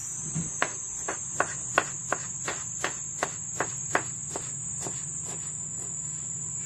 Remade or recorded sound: recorded